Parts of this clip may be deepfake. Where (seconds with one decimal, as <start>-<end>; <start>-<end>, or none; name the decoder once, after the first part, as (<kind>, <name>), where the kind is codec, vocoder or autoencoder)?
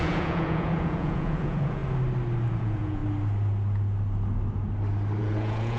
0.0-1.8 (vocoder, Vocos); 2.6-3.0; 5.2-5.8